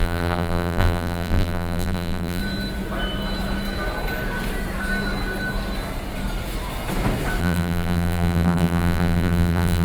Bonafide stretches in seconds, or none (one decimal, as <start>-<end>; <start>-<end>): 2.4-7.4